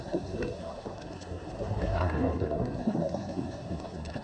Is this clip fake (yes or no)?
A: yes